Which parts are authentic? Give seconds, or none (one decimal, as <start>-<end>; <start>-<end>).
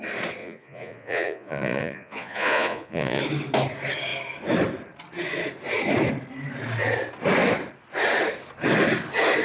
0.0-0.4; 3.2-9.4